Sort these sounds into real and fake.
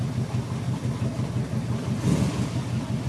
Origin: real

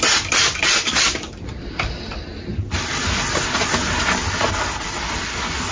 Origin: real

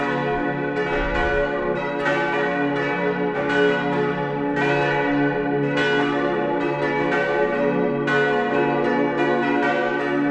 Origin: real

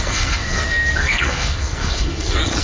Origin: fake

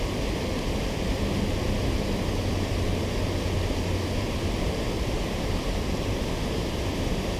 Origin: real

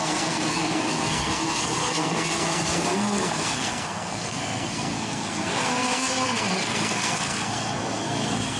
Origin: fake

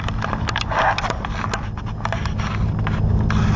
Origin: real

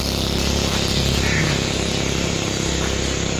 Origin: real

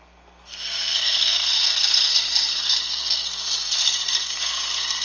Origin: fake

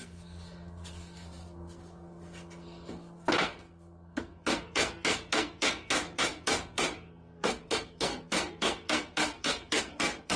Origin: fake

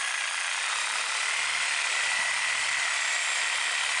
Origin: real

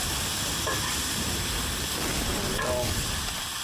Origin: real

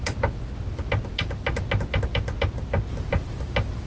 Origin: real